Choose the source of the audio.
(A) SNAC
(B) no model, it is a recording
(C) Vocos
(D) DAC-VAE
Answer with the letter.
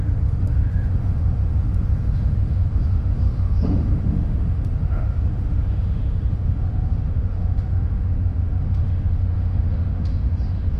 D